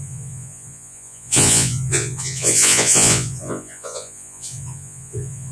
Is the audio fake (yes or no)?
yes